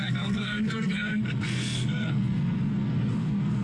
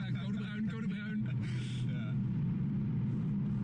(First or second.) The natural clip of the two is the second